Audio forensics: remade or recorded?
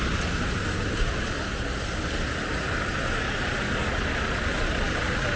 recorded